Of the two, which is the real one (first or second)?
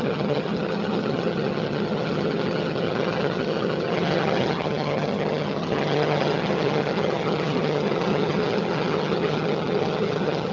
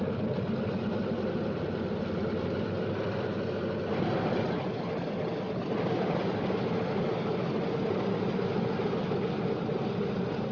second